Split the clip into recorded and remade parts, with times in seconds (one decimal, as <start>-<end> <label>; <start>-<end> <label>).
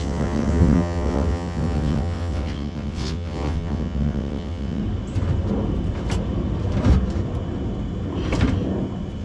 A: 0.0-4.8 remade; 4.8-9.2 recorded